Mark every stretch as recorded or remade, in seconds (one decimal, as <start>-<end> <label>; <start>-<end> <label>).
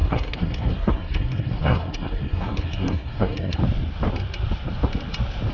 0.0-3.6 remade; 3.6-5.5 recorded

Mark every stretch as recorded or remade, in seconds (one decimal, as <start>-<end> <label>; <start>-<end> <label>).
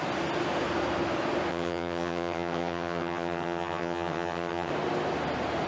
0.0-1.5 recorded; 1.5-4.7 remade; 4.7-5.7 recorded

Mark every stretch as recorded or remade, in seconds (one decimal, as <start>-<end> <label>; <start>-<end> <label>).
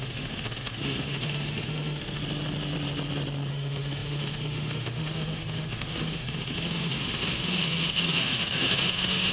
0.0-2.2 remade; 2.2-3.5 recorded; 3.5-9.3 remade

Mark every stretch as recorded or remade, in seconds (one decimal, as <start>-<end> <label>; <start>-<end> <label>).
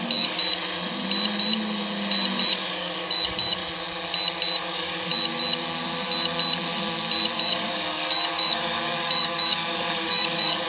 0.0-0.4 remade; 0.4-2.5 recorded; 2.5-3.6 remade; 3.6-4.6 recorded; 4.6-5.1 remade; 5.1-7.4 recorded; 7.4-10.7 remade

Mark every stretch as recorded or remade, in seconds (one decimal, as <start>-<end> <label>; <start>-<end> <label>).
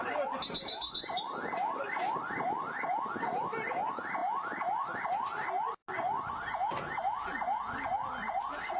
0.0-8.8 recorded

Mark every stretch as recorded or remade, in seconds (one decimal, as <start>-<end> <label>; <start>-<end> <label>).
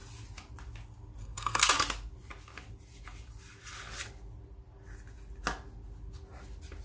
0.0-1.2 recorded; 1.2-1.7 remade; 1.7-6.8 recorded